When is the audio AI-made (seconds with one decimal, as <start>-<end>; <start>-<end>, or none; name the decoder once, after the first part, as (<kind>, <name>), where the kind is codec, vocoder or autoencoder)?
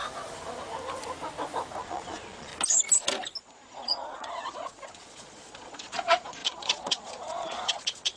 1.8-2.5 (vocoder, Vocos); 3.4-8.2